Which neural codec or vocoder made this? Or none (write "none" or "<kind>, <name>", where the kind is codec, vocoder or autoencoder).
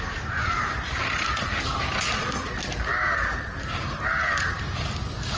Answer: none